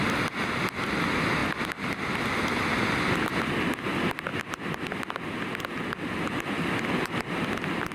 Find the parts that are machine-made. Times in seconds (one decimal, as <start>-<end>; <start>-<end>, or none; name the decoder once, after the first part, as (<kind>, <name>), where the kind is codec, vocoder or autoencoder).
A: none